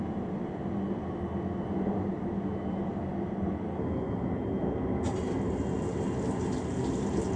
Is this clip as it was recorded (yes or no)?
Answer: yes